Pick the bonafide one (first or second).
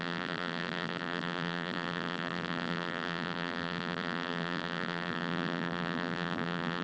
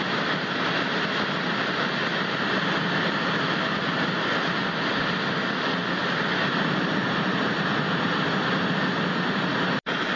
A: second